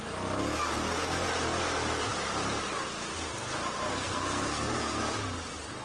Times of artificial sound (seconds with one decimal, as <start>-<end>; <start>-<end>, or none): 3.9-5.0